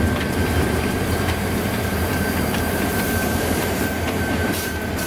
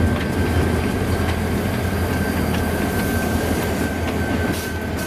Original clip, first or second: second